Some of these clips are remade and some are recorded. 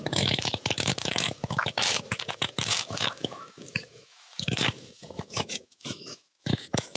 remade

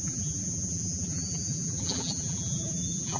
remade